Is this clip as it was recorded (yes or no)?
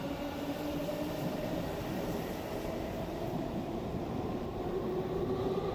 no